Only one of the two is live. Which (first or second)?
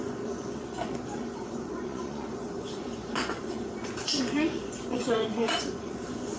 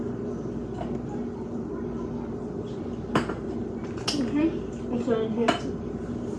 second